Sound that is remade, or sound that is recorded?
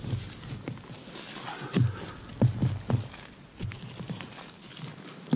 recorded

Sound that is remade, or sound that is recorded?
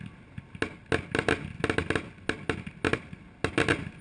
recorded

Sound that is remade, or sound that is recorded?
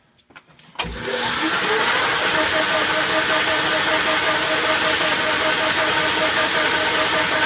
recorded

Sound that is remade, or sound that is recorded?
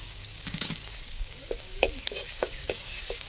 remade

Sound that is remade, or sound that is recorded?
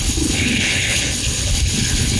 remade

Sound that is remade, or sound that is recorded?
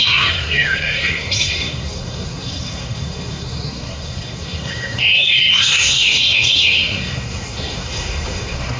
remade